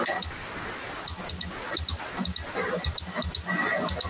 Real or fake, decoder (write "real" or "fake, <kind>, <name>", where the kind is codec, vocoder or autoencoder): real